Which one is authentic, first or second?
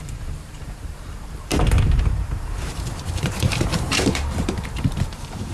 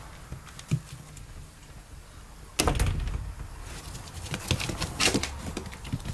second